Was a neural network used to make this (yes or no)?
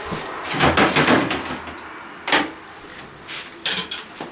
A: no